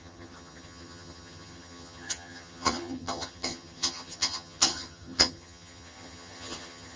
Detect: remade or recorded remade